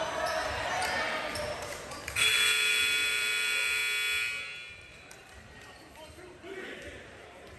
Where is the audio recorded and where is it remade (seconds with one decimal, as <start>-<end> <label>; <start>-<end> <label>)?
0.0-3.8 remade; 3.8-4.7 recorded; 4.7-7.6 remade